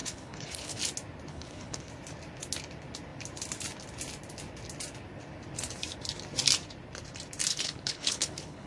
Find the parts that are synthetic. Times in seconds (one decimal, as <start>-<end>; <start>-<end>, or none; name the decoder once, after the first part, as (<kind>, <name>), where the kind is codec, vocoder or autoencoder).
0.0-0.8 (codec, HILCodec); 1.3-1.9; 7.5-8.7